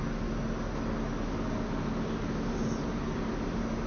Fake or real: real